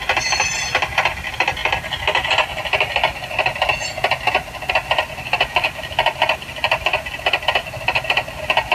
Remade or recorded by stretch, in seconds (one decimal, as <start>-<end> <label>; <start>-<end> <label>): 0.0-8.7 recorded

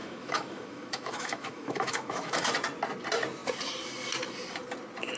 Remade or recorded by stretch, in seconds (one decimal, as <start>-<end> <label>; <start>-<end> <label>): 0.0-2.5 remade; 2.5-5.2 recorded

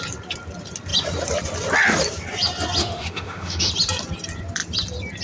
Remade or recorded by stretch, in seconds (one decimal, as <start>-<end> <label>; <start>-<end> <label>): 0.0-2.8 recorded; 2.8-3.7 remade; 3.7-5.2 recorded